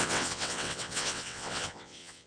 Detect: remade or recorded remade